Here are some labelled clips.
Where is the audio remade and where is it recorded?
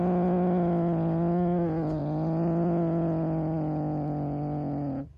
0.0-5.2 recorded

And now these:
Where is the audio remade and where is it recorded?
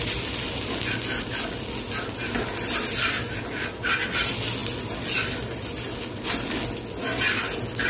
0.0-7.9 recorded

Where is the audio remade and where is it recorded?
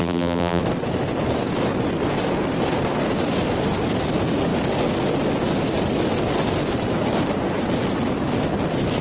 0.0-0.6 remade; 0.6-9.0 recorded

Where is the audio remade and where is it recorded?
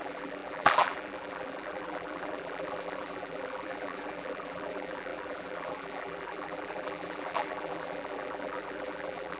0.0-9.4 remade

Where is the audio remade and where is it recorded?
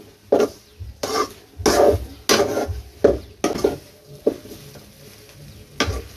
0.0-6.2 recorded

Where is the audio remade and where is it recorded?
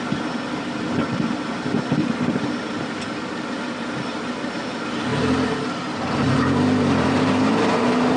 0.0-2.0 recorded; 2.0-3.8 remade; 3.8-8.2 recorded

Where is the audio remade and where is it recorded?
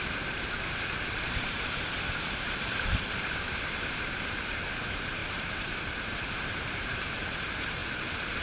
0.0-7.8 remade; 7.8-8.4 recorded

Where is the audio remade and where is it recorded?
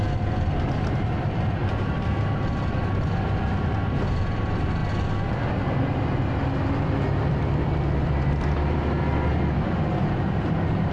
0.0-1.6 remade; 1.6-4.1 recorded; 4.1-4.8 remade; 4.8-6.7 recorded; 6.7-9.3 remade; 9.3-10.0 recorded; 10.0-10.9 remade